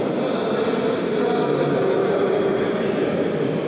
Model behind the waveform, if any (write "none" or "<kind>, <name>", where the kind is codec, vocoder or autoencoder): none